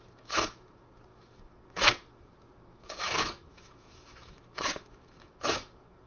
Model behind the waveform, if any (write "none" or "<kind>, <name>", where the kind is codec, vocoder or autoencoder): autoencoder, DAC-VAE